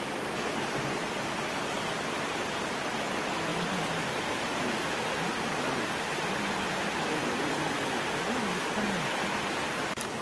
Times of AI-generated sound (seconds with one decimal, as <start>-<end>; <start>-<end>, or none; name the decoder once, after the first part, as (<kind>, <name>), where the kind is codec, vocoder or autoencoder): 3.5-6.1 (vocoder, BigVGAN v2)

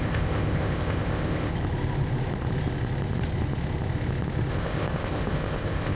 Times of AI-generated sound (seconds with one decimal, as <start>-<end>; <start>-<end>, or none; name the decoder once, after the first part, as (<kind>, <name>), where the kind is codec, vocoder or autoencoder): 0.0-1.5 (codec, ZipCodec); 4.5-6.0

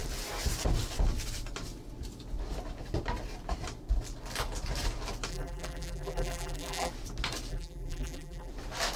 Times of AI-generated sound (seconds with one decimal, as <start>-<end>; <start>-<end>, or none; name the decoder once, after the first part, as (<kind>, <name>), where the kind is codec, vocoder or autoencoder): 5.3-6.9 (vocoder, BigVGAN v2); 7.5-8.5